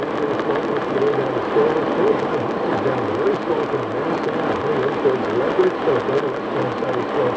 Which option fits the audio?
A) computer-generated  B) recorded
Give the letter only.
B